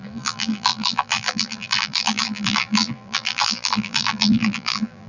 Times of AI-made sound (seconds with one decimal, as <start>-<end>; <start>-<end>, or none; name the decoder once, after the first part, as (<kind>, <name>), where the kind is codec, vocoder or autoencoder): 0.0-5.1 (vocoder, BigVGAN v2)